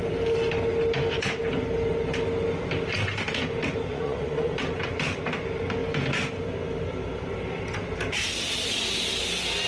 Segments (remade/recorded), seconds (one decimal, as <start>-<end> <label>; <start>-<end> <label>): 0.0-3.9 recorded; 3.9-4.6 remade; 4.6-9.7 recorded